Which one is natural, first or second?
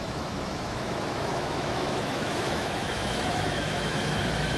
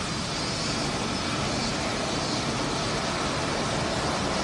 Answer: second